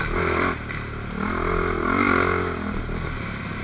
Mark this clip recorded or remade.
recorded